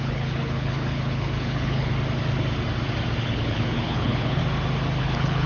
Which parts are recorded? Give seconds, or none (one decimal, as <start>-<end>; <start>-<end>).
1.9-3.2; 4.4-5.0